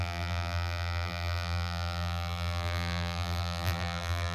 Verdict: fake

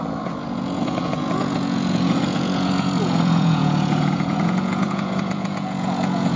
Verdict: fake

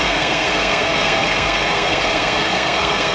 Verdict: fake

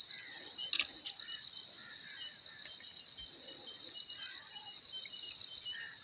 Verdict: real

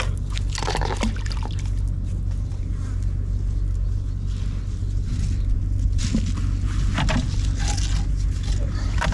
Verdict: real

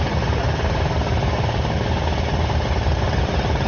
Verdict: real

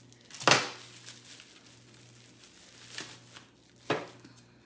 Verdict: real